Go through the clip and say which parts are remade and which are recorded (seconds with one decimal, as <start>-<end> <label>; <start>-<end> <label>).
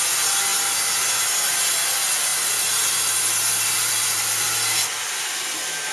0.0-5.9 recorded